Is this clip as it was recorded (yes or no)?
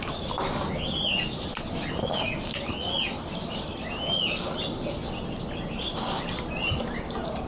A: yes